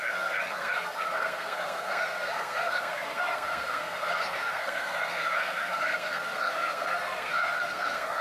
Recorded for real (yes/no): no